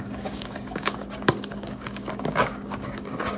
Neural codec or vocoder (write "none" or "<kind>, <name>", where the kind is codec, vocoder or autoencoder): codec, DAC